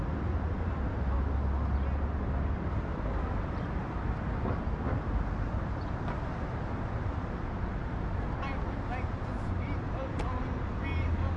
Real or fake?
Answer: real